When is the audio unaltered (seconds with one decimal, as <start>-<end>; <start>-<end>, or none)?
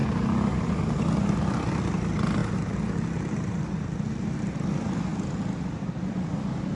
0.0-6.7